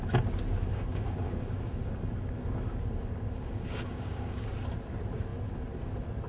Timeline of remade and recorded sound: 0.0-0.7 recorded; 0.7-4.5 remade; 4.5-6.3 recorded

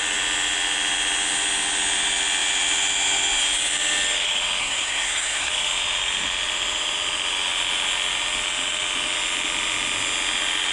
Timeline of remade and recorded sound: 0.0-4.6 recorded; 4.6-5.5 remade; 5.5-10.7 recorded

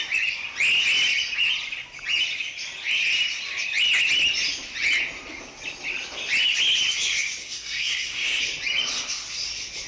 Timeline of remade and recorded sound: 0.0-7.4 recorded; 7.4-8.4 remade; 8.4-9.9 recorded

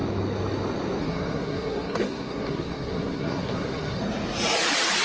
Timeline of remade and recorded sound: 0.0-1.0 recorded; 1.0-4.0 remade; 4.0-5.0 recorded

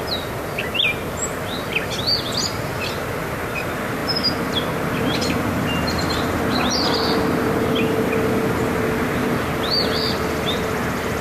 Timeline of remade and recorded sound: 0.0-11.2 recorded